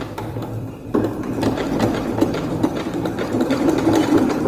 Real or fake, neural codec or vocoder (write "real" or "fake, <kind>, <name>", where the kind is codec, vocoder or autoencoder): fake, vocoder, BigVGAN v2